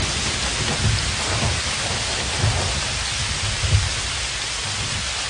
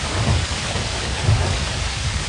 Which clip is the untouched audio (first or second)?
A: first